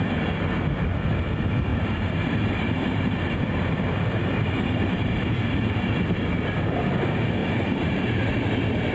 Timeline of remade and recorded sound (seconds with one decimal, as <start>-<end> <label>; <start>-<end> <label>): 0.0-1.7 recorded; 1.7-6.9 remade; 6.9-7.4 recorded; 7.4-8.0 remade; 8.0-8.9 recorded